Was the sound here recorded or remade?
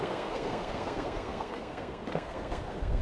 remade